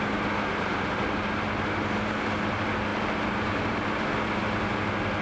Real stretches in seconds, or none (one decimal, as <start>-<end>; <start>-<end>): 0.0-5.2